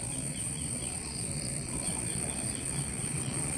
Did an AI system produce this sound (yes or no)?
yes